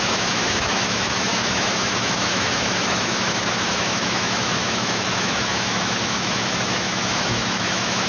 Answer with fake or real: fake